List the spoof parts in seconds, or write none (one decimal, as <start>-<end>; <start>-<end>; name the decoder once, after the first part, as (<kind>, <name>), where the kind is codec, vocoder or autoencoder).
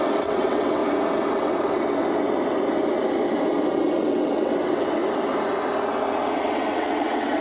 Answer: 0.0-0.8 (vocoder, WaveNeXt); 1.3-2.0; 4.0-5.0; 6.4-7.4